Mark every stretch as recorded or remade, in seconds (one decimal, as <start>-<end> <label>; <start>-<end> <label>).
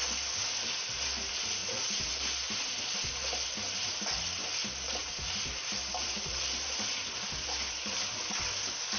0.0-5.0 recorded; 5.0-6.9 remade; 6.9-9.0 recorded